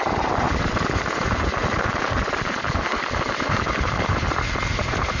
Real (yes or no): no